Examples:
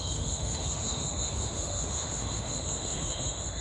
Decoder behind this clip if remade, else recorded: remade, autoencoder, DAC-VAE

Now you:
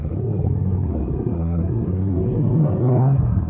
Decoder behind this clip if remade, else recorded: remade, codec, SNAC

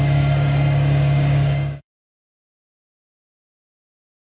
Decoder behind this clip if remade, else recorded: remade, codec, DAC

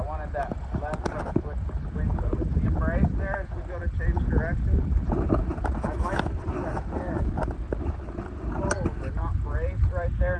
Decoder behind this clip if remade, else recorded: recorded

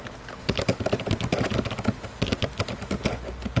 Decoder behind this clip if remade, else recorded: recorded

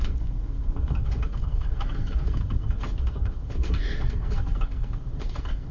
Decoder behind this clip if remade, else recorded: remade, codec, SNAC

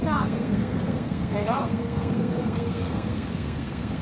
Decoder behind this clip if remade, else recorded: remade, codec, SNAC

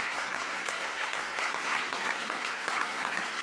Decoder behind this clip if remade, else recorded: remade, codec, SNAC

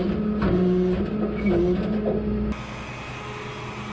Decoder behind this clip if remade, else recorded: recorded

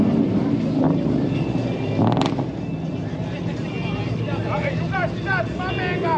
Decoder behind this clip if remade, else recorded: recorded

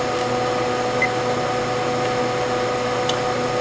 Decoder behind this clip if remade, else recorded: recorded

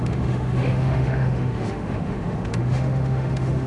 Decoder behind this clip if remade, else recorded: remade, autoencoder, DAC-VAE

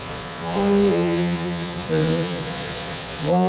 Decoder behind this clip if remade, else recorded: remade, vocoder, Vocos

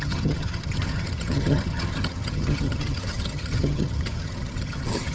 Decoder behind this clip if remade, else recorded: remade, vocoder, HiFi-GAN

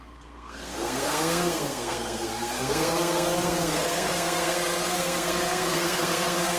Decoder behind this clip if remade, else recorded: remade, codec, SNAC